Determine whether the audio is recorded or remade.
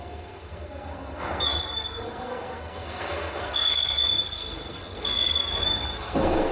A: remade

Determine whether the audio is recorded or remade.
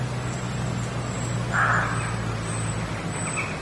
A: recorded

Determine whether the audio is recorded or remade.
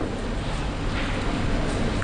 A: recorded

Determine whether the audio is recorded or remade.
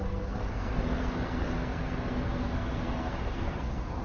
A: remade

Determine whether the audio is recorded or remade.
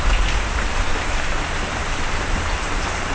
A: recorded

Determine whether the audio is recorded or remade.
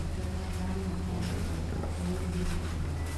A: recorded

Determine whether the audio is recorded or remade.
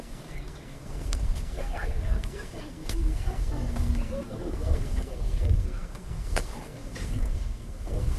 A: remade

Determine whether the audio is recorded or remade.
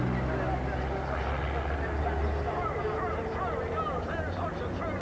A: recorded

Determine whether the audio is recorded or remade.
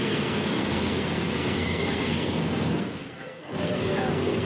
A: remade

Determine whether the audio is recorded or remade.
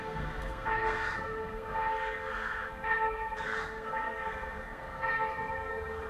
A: remade